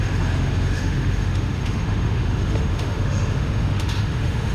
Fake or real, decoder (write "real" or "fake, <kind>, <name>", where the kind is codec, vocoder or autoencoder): fake, autoencoder, DAC-VAE